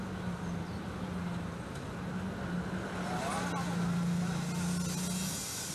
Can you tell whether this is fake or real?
real